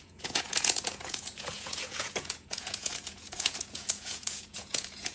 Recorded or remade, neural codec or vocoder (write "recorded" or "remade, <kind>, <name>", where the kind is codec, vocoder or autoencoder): remade, vocoder, Vocos